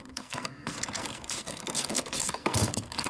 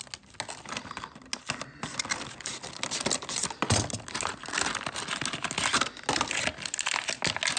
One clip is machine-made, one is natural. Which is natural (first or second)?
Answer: second